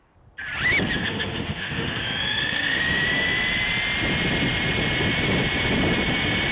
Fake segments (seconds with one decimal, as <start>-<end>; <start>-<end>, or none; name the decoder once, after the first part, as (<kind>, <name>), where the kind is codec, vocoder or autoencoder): 1.0-2.8 (autoencoder, DAC-VAE)